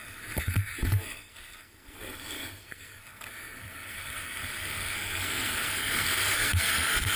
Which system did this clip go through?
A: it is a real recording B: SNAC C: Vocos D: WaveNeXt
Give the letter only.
B